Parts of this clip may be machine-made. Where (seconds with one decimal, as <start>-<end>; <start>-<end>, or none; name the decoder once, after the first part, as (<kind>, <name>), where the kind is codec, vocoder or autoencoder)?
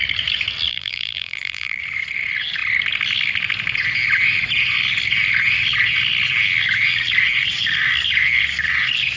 0.7-1.8 (vocoder, BigVGAN v2)